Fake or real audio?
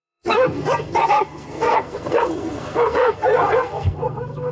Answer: fake